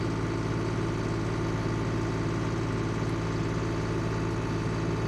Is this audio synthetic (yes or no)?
no